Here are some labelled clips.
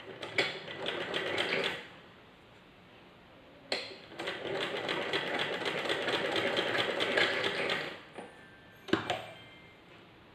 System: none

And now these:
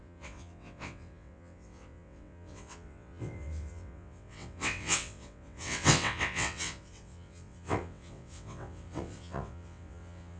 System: vocoder, WaveNeXt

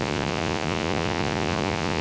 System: vocoder, Vocos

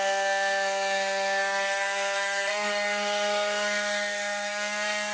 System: codec, SNAC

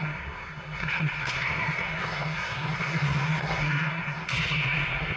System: codec, SNAC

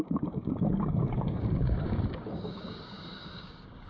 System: codec, DAC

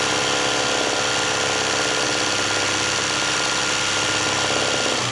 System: none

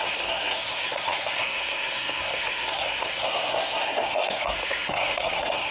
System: codec, SNAC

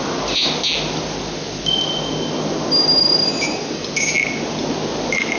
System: none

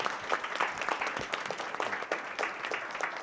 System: none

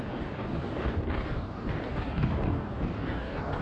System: codec, DAC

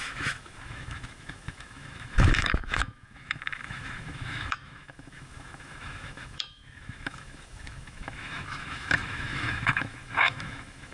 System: autoencoder, DAC-VAE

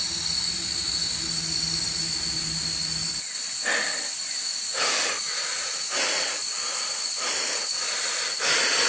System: none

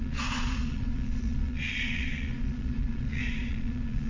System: vocoder, Vocos